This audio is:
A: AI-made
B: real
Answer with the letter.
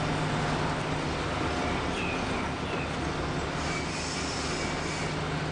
B